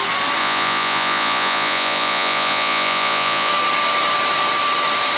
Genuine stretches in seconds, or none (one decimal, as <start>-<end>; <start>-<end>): 0.0-0.4; 3.5-5.2